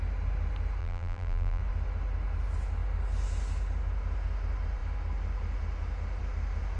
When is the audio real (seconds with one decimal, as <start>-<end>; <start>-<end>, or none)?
0.0-0.8; 1.6-6.8